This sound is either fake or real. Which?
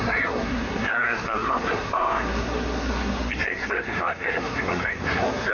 fake